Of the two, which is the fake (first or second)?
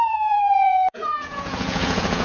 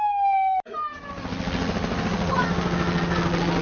first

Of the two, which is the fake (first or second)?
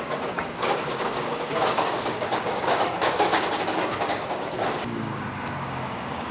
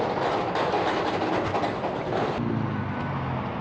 first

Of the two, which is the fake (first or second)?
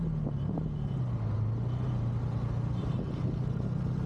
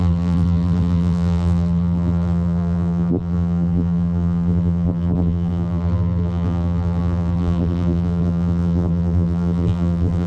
second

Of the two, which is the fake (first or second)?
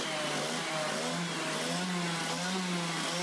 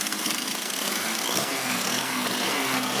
second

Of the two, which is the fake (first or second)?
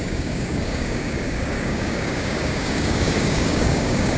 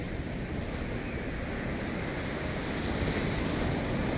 first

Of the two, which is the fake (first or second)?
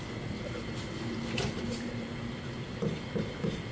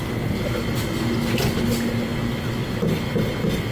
first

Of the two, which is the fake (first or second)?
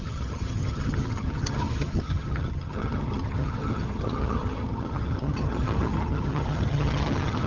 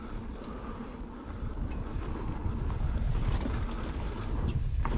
first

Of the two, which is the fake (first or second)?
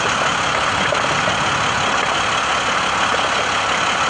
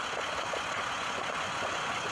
second